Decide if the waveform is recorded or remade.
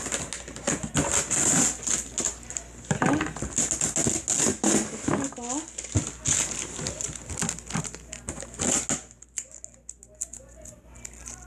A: recorded